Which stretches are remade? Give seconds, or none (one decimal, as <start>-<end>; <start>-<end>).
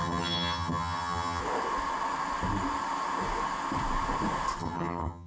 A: 0.0-1.4; 4.6-5.3